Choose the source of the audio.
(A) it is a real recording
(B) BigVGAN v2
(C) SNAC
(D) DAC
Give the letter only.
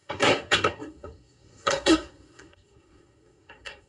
C